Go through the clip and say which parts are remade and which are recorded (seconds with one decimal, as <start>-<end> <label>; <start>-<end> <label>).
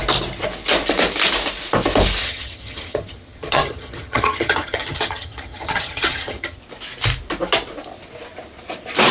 0.0-2.2 recorded; 2.2-6.6 remade; 6.6-9.1 recorded